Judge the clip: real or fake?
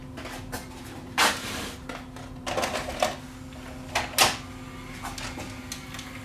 real